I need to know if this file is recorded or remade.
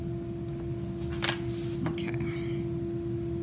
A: recorded